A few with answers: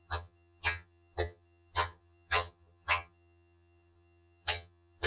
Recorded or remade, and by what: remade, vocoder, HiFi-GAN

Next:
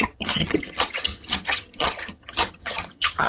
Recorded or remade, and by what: remade, vocoder, HiFi-GAN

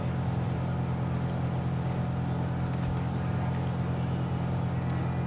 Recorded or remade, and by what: recorded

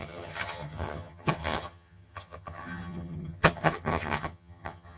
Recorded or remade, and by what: remade, vocoder, HiFi-GAN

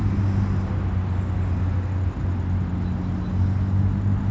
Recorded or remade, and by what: recorded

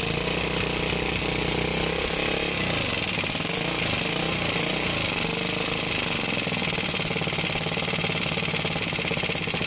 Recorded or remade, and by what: recorded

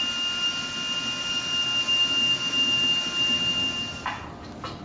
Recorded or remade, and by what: recorded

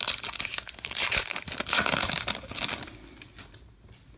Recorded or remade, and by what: recorded